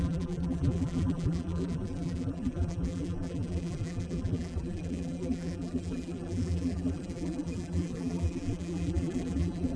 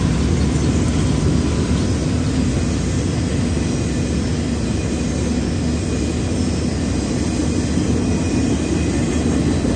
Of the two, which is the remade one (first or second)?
first